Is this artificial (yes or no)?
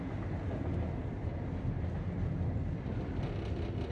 no